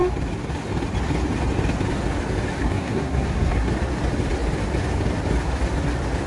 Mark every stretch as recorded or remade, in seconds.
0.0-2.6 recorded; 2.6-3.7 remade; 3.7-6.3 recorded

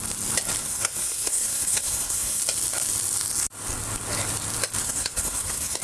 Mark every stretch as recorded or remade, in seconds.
0.0-0.6 recorded; 0.6-2.4 remade; 2.4-4.8 recorded; 4.8-5.8 remade

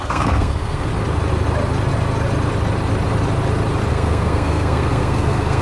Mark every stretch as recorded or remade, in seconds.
0.0-0.9 remade; 0.9-3.9 recorded; 3.9-5.6 remade

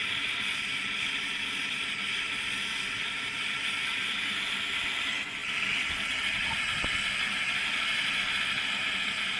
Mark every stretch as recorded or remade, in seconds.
0.0-9.4 recorded

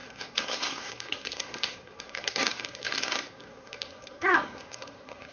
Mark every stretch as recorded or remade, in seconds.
0.0-5.3 remade

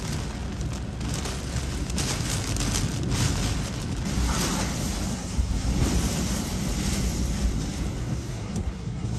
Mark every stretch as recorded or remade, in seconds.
0.0-5.1 recorded; 5.1-5.7 remade; 5.7-8.0 recorded; 8.0-9.2 remade